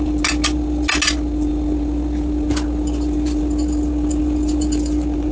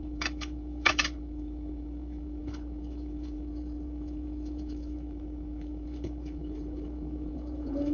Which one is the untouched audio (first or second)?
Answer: first